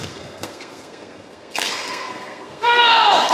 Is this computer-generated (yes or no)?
yes